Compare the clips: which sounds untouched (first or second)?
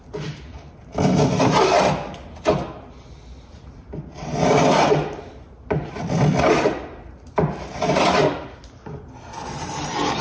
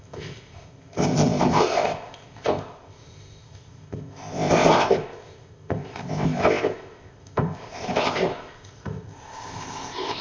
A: first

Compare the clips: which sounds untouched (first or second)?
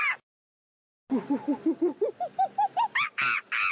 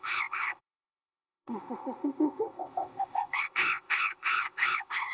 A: first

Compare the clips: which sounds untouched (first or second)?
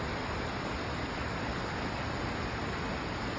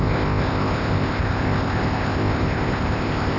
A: first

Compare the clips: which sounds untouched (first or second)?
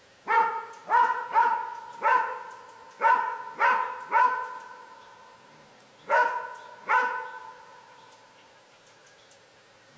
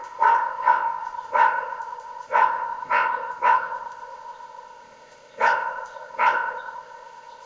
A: first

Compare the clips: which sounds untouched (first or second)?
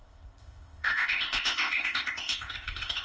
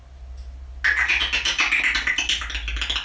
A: second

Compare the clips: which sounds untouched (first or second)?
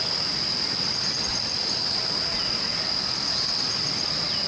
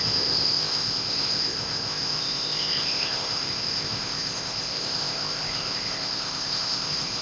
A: first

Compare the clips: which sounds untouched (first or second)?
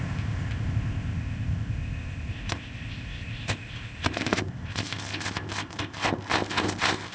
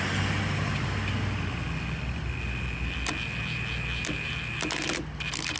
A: second